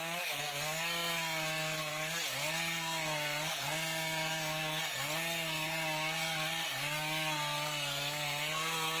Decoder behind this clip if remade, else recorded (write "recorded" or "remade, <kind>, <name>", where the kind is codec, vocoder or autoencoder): remade, codec, SNAC